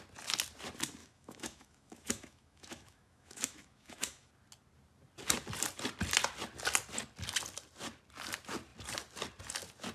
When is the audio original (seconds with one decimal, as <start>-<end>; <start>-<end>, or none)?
0.0-1.0; 4.3-9.9